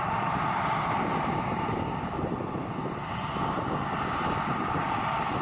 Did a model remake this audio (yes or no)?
no